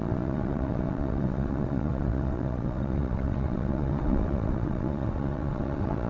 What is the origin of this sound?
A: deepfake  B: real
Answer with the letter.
A